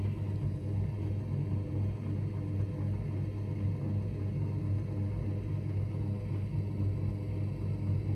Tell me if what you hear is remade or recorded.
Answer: recorded